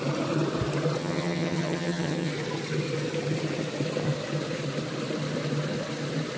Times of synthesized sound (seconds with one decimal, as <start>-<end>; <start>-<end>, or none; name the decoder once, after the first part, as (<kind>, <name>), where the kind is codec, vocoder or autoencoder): 1.0-2.3 (vocoder, HiFi-GAN)